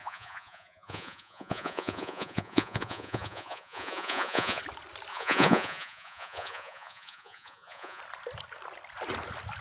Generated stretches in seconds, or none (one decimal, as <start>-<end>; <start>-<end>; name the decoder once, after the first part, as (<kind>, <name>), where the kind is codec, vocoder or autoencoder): 0.0-4.6 (vocoder, Vocos); 5.1-8.0